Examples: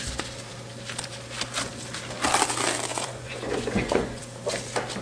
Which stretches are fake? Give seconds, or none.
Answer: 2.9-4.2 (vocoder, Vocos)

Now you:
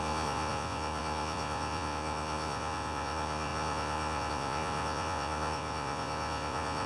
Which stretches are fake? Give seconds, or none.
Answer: 0.0-6.9 (vocoder, Vocos)

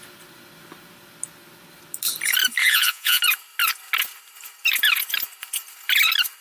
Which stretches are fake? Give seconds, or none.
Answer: 2.6-3.2 (vocoder, Vocos)

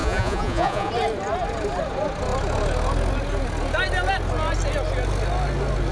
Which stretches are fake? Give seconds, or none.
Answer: 0.0-0.9 (vocoder, Vocos)

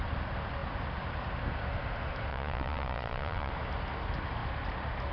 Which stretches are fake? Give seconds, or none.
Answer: 2.3-3.5 (vocoder, Vocos)

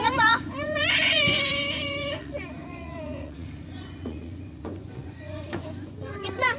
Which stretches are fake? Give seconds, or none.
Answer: 0.0-6.6 (vocoder, Vocos)

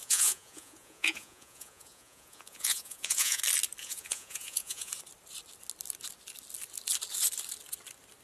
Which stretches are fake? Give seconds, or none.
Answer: 0.0-3.4 (vocoder, Vocos); 3.8-4.9

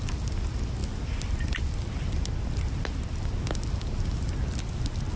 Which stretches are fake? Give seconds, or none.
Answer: none